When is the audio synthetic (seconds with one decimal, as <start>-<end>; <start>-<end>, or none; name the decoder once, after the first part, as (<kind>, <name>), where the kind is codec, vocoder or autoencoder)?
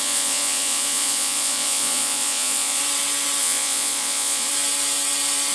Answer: 0.0-2.8 (vocoder, Vocos); 3.4-4.5